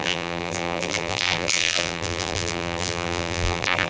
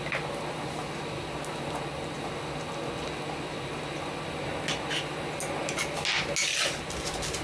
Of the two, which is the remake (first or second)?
first